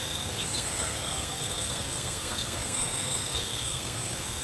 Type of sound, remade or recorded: remade